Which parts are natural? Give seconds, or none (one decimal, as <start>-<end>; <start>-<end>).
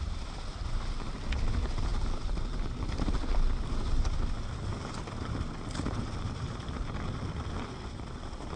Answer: 0.0-1.9; 2.8-8.6